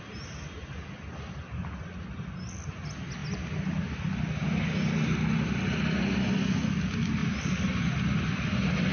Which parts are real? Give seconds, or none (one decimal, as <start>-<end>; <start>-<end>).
0.0-8.9